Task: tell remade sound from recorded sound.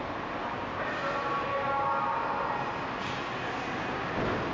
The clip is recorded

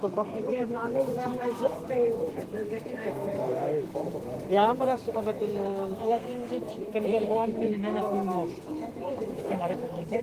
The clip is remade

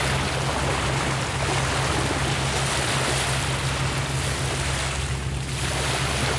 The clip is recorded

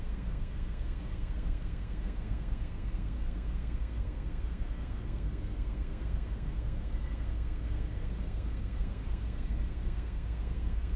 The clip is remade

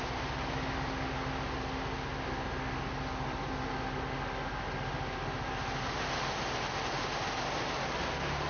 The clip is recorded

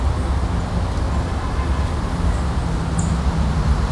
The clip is recorded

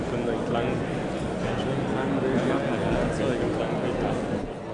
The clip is recorded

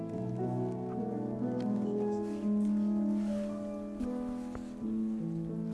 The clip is recorded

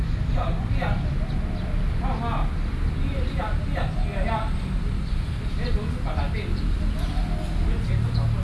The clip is recorded